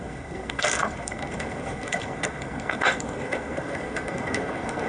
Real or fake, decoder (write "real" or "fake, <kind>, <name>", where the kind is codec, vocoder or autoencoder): fake, codec, SNAC